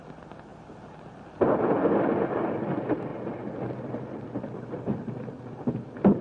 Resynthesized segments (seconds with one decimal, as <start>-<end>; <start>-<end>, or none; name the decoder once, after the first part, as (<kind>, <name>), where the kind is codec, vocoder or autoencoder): 3.1-3.7 (vocoder, BigVGAN v2)